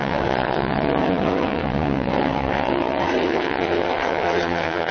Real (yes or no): no